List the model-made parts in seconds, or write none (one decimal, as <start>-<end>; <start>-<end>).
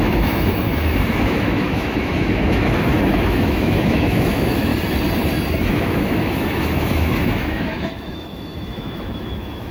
0.0-4.7; 5.7-9.7